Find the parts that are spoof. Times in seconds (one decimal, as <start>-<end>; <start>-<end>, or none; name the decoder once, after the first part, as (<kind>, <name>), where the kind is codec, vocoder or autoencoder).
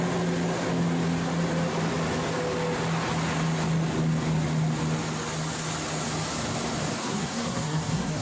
7.0-8.2 (codec, SNAC)